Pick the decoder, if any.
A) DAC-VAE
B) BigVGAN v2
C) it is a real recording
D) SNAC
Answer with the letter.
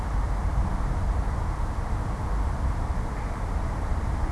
C